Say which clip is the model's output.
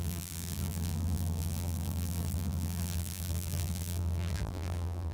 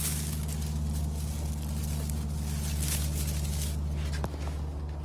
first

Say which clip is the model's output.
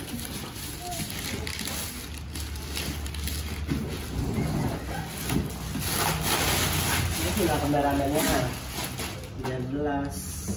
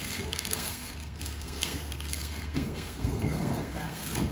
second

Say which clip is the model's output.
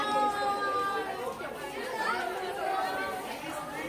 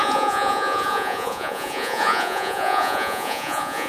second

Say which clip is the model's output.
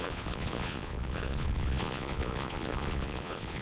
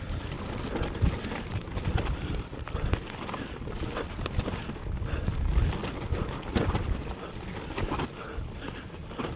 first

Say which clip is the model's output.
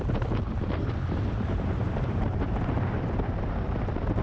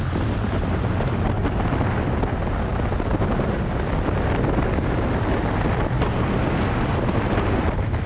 first